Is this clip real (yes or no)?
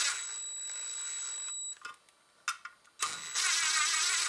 yes